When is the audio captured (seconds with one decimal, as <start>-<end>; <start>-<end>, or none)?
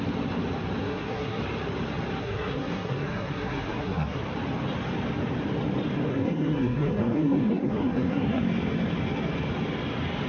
0.0-0.8; 1.4-2.2; 4.2-6.1; 8.4-10.3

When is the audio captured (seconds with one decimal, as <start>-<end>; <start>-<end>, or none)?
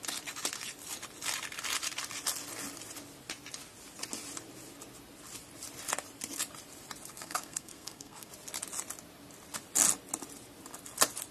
0.0-7.1; 8.3-11.3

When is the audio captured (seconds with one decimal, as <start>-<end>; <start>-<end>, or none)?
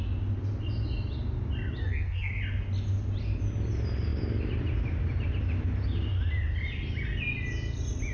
0.0-1.8; 2.3-8.1